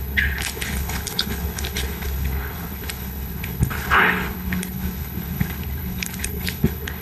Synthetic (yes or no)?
yes